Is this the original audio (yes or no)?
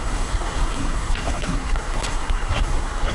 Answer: no